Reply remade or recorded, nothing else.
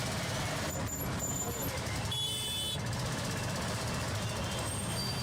recorded